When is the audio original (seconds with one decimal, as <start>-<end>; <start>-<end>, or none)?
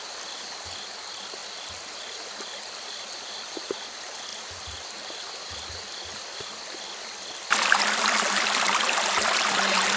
0.0-10.0